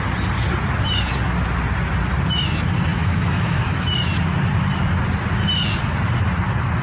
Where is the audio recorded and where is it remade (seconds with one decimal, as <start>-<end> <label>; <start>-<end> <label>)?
0.0-2.9 recorded; 2.9-3.6 remade; 3.6-6.8 recorded